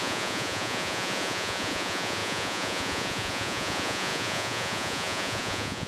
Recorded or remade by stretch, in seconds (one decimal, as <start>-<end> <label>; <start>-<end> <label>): 0.0-5.9 remade